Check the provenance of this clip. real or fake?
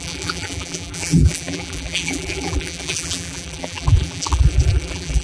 fake